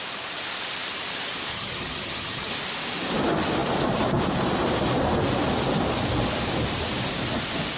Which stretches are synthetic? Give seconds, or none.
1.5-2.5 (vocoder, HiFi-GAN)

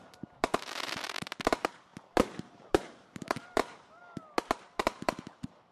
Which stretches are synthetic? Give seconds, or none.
0.0-1.9 (vocoder, BigVGAN v2); 2.5-4.0; 4.8-5.7

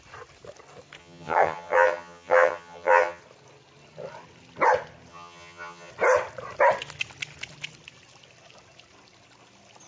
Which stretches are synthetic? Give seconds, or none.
1.0-3.2 (vocoder, HiFi-GAN); 5.1-5.9

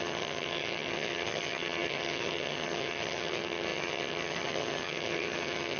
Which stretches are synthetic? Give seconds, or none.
0.0-5.8 (vocoder, HiFi-GAN)

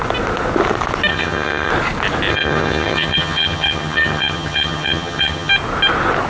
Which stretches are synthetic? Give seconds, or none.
1.1-1.7 (vocoder, HiFi-GAN); 2.3-5.5

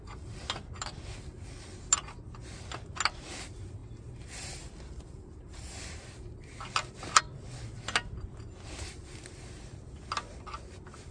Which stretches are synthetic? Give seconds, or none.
none